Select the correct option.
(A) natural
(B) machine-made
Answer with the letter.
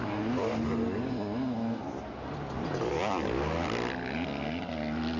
A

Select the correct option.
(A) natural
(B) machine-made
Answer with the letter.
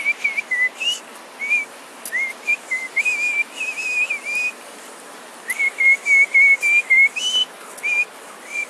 A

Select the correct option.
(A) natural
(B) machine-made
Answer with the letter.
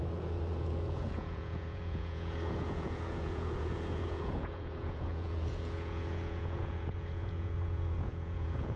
B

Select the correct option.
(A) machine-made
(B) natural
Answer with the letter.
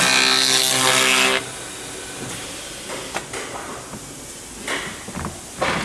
B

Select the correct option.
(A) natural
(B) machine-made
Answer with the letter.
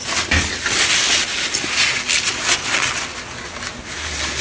A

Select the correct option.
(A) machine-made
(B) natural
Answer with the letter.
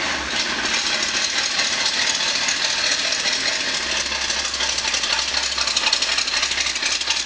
B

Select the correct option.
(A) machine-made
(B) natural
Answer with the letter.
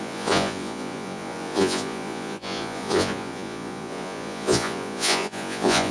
A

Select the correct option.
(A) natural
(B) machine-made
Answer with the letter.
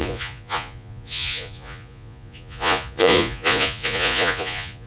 B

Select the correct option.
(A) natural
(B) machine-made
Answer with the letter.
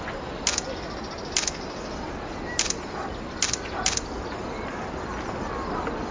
A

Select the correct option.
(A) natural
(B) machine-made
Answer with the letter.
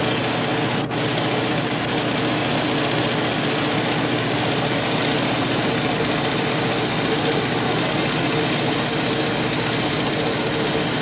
A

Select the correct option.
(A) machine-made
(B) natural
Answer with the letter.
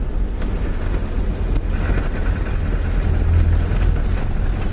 B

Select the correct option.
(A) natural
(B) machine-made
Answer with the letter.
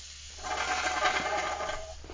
A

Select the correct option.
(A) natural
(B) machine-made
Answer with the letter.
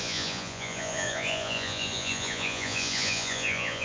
B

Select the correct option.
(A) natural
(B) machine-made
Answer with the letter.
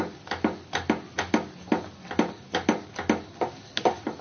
A